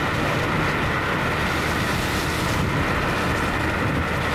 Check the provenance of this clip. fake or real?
real